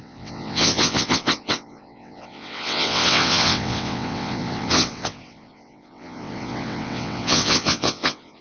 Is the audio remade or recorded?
remade